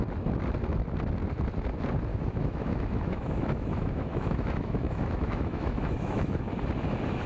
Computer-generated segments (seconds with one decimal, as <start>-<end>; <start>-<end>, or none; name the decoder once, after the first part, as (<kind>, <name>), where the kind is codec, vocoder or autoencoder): 2.1-6.4 (autoencoder, DAC-VAE)

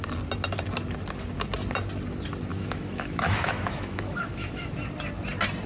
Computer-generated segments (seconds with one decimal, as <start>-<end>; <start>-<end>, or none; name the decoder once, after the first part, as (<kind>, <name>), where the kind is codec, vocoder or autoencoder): 2.5-4.7 (autoencoder, DAC-VAE)

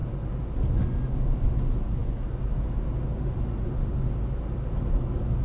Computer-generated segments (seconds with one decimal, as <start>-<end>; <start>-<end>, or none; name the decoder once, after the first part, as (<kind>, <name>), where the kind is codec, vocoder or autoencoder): none

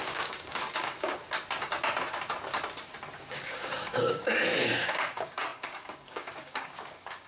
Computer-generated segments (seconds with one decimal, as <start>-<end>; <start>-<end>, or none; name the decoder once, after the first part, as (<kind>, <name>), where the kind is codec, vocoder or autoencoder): 0.0-1.2 (codec, DAC); 3.2-7.3

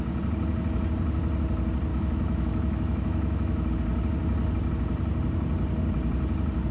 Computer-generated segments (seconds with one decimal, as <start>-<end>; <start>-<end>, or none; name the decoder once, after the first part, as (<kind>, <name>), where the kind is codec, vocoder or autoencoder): 1.9-3.7 (autoencoder, DAC-VAE)

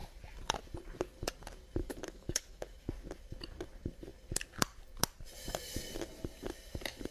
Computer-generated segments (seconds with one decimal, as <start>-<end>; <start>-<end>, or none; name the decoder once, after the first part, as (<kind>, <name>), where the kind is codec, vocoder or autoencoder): 1.8-2.9 (autoencoder, DAC-VAE)

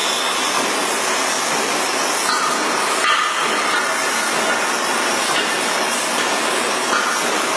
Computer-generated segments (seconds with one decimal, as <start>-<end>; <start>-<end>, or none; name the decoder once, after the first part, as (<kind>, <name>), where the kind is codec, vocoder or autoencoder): none

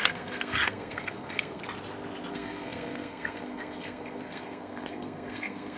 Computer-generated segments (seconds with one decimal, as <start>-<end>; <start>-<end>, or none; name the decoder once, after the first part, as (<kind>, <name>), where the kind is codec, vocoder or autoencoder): 0.0-1.6 (codec, SNAC); 2.3-5.8